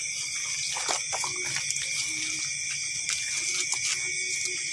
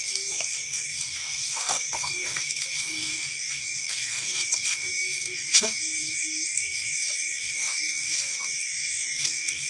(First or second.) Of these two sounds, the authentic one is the first